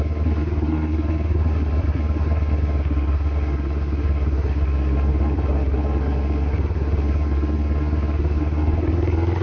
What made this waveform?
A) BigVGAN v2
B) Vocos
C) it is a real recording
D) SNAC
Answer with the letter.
D